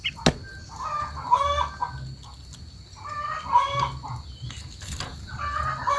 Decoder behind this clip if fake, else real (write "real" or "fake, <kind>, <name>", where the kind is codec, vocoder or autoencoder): real